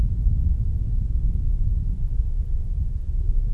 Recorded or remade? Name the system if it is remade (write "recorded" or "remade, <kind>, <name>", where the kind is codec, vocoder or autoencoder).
recorded